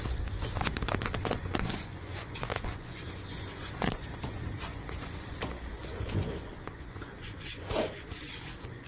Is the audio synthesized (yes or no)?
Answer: yes